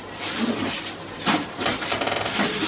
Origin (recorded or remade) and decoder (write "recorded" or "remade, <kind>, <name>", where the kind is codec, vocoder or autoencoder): recorded